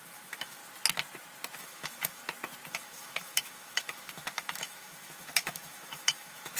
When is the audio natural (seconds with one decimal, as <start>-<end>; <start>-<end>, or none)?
0.6-1.6; 2.2-2.7